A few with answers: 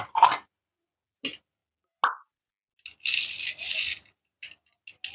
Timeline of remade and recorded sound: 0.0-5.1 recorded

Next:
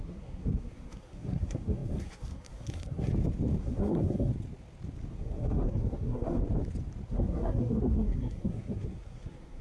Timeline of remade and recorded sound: 0.0-3.1 remade; 3.1-3.6 recorded; 3.6-4.3 remade; 4.3-5.1 recorded; 5.1-6.4 remade; 6.4-7.1 recorded; 7.1-9.6 remade

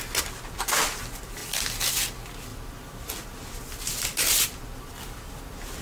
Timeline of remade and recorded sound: 0.0-5.8 recorded

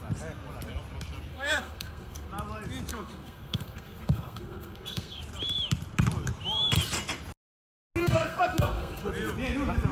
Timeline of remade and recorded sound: 0.0-1.3 recorded; 1.3-2.3 remade; 2.3-2.9 recorded; 2.9-5.2 remade; 5.2-8.0 recorded; 8.0-9.1 remade; 9.1-9.9 recorded

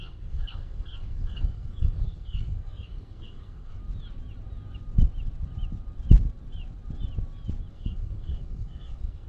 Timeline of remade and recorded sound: 0.0-3.8 remade; 3.8-7.7 recorded; 7.7-9.3 remade

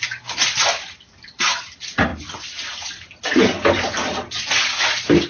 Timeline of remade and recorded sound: 0.0-5.3 recorded

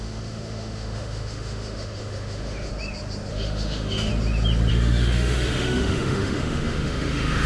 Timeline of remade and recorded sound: 0.0-2.7 remade; 2.7-3.3 recorded; 3.3-4.1 remade; 4.1-4.7 recorded; 4.7-7.5 remade

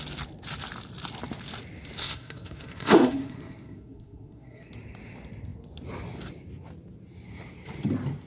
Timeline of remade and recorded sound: 0.0-2.0 recorded; 2.0-4.7 remade; 4.7-8.3 recorded